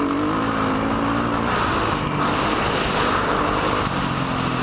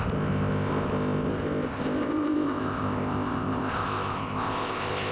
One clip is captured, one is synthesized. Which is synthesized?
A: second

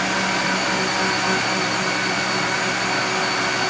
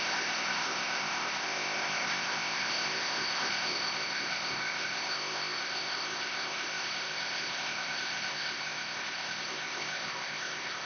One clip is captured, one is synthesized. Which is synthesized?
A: second